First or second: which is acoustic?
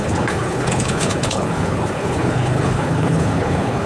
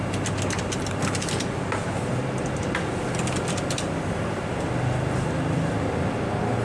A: second